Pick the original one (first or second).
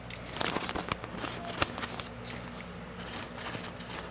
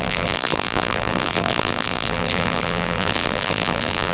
first